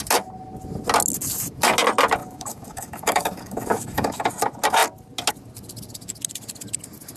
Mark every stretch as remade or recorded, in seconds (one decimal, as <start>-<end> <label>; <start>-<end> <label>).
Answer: 0.0-2.2 recorded; 2.2-4.3 remade; 4.3-7.2 recorded